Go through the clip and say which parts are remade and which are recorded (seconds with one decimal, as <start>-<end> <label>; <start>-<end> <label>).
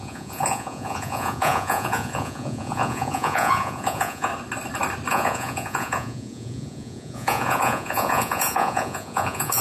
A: 0.0-4.3 remade; 4.3-5.1 recorded; 5.1-9.6 remade